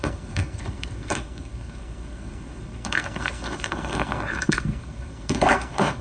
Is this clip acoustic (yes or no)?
no